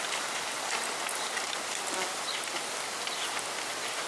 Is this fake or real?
real